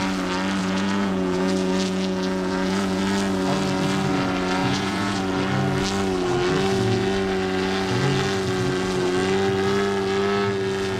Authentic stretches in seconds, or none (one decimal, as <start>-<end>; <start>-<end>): 0.0-0.6; 3.0-4.6; 5.2-11.0